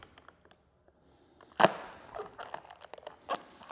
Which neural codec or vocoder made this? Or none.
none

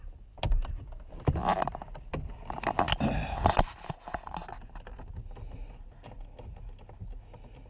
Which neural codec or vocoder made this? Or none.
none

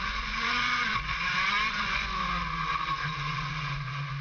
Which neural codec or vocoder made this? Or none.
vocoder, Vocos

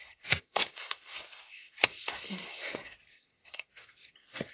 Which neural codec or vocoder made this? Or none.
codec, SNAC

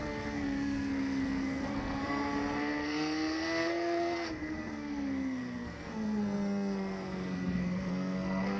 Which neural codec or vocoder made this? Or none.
codec, SNAC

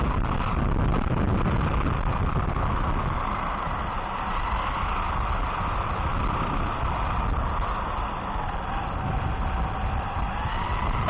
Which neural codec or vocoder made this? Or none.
none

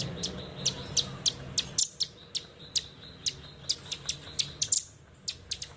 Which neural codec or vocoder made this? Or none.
none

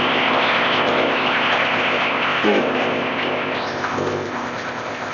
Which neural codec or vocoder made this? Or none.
codec, ZipCodec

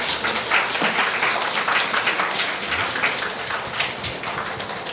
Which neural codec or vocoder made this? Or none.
none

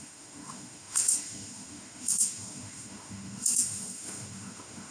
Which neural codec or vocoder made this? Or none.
autoencoder, DAC-VAE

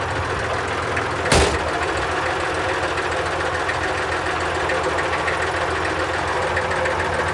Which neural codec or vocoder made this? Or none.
none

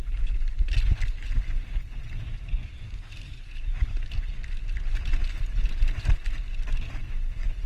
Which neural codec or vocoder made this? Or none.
none